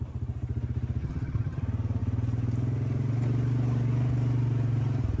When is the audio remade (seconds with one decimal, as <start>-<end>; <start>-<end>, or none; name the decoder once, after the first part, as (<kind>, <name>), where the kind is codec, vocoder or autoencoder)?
1.0-1.6 (vocoder, HiFi-GAN)